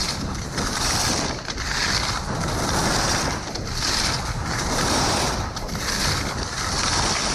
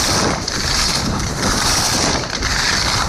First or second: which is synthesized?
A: second